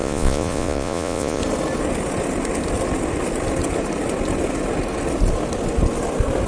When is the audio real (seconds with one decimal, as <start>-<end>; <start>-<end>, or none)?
1.4-6.5